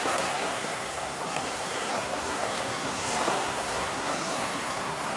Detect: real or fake fake